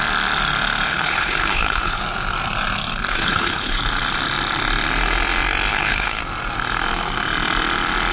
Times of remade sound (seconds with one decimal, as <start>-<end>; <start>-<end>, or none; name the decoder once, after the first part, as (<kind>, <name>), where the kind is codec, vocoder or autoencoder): 0.9-2.0 (codec, HILCodec); 3.1-3.8; 5.7-6.2